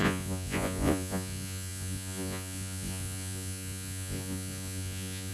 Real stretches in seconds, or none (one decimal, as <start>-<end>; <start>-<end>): none